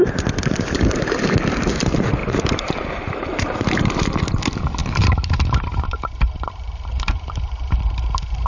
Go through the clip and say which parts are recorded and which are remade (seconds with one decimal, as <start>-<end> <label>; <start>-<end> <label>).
0.0-2.2 recorded; 2.2-3.9 remade; 3.9-4.8 recorded; 4.8-7.8 remade; 7.8-8.5 recorded